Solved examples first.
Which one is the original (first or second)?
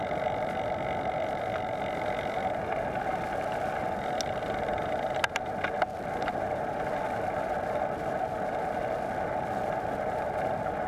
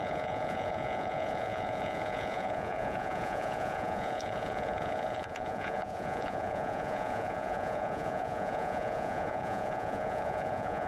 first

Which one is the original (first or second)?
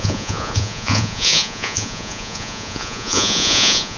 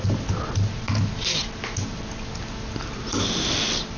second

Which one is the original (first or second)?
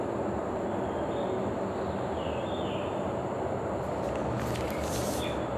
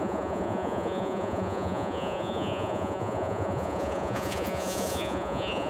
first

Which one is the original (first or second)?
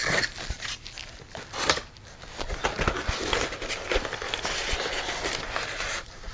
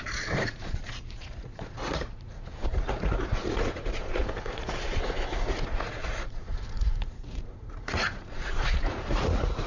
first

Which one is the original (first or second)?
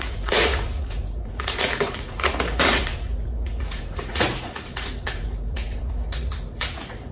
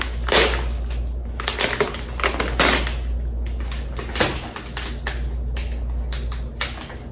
second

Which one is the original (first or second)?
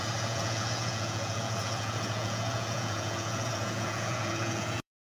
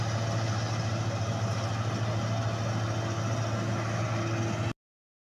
second